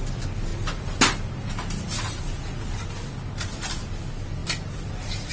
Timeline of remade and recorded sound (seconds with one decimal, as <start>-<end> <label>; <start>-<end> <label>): 0.0-5.3 recorded